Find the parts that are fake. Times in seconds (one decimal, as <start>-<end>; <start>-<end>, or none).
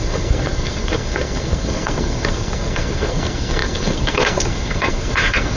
0.0-5.6